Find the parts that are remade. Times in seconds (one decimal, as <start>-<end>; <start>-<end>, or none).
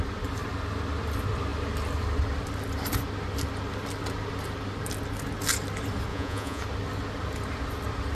6.1-6.6